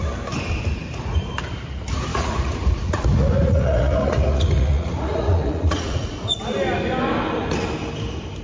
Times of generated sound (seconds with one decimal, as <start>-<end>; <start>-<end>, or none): 2.1-6.4